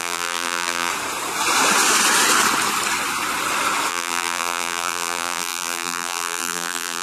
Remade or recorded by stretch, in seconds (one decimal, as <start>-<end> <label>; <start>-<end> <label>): 0.0-0.9 remade; 0.9-3.9 recorded; 3.9-7.0 remade